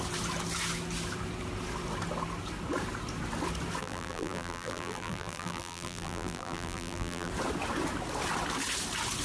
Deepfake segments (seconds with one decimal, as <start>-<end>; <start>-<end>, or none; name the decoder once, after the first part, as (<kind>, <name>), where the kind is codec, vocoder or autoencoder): 3.8-7.3 (vocoder, BigVGAN v2)